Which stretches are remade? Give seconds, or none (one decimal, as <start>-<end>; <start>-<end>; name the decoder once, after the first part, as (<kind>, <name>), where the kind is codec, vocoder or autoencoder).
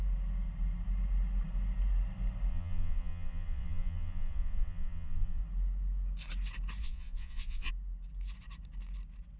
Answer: 2.5-5.4 (vocoder, Vocos); 6.8-7.7